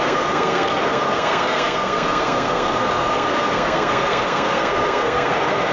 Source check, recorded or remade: remade